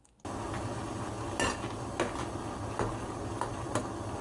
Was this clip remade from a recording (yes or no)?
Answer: no